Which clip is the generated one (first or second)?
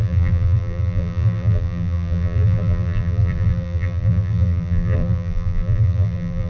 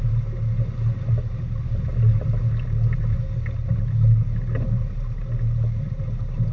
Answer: first